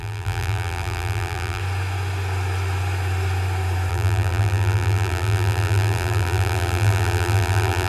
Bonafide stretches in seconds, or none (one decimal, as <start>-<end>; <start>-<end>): 1.6-3.9

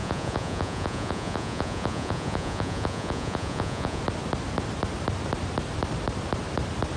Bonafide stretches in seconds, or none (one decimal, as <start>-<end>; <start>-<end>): 4.0-7.0